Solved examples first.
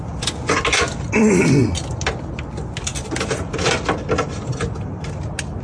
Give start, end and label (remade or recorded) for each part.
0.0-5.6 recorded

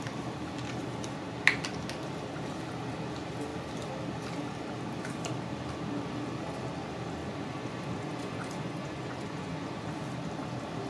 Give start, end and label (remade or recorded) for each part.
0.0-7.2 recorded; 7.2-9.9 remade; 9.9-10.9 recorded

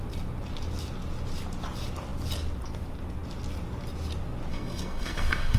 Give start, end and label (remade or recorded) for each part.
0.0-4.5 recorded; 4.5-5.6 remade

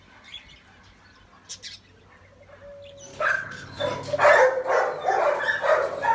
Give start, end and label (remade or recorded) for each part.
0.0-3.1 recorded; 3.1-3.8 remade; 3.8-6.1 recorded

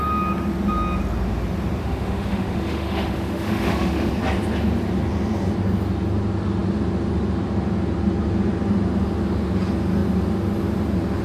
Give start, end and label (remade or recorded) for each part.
0.0-1.8 recorded; 1.8-4.1 remade; 4.1-11.2 recorded

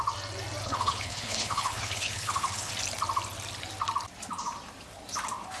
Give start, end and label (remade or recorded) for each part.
0.0-0.6 recorded; 0.6-2.7 remade; 2.7-5.6 recorded